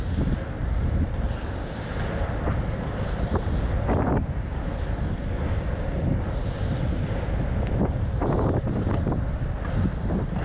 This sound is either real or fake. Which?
real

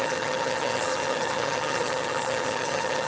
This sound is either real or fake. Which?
fake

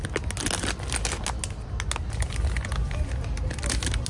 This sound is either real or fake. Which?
real